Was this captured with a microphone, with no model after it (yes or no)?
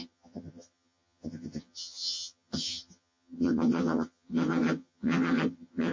no